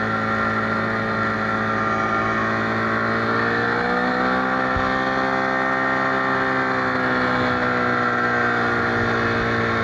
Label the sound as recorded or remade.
recorded